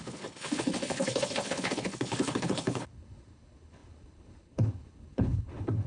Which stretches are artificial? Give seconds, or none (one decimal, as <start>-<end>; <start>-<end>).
0.0-5.9